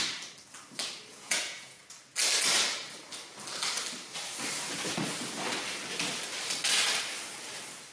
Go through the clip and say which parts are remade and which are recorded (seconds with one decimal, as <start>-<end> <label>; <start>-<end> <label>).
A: 0.0-1.1 recorded; 1.1-1.8 remade; 1.8-7.9 recorded